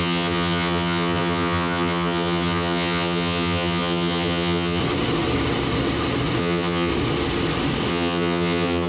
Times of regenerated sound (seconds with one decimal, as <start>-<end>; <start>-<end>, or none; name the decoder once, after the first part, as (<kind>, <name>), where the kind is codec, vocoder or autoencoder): 0.0-4.8 (vocoder, HiFi-GAN); 6.4-6.9; 7.9-8.9